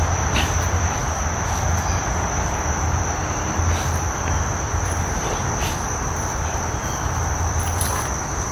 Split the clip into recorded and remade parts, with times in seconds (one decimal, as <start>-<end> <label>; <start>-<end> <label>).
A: 0.0-1.0 remade; 1.0-1.9 recorded; 1.9-8.5 remade